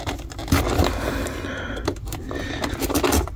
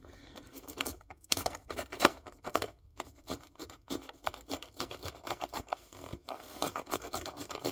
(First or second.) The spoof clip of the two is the second